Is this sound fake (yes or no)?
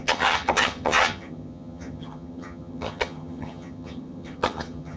yes